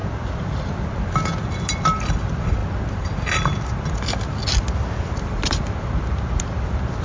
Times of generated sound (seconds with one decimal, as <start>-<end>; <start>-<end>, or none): none